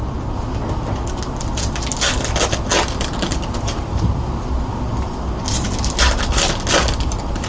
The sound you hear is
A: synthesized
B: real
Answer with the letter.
B